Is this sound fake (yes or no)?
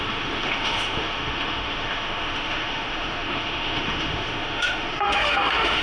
yes